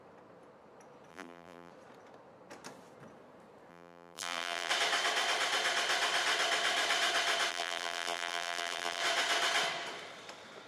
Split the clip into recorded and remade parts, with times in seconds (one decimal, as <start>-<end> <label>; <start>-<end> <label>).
0.0-1.1 recorded; 1.1-1.7 remade; 1.7-3.7 recorded; 3.7-4.7 remade; 4.7-7.5 recorded; 7.5-9.0 remade; 9.0-10.7 recorded